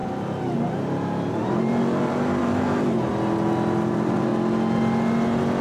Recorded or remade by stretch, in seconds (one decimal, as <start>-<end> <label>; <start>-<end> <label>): 0.0-1.3 recorded; 1.3-3.1 remade; 3.1-3.9 recorded; 3.9-4.3 remade; 4.3-5.6 recorded